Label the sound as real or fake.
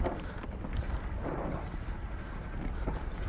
real